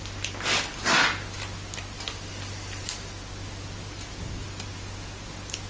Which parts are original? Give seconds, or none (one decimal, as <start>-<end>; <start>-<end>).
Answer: 0.0-5.7